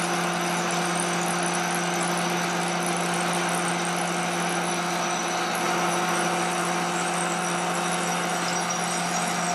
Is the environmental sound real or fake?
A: real